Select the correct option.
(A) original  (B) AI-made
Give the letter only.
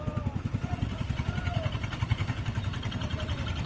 B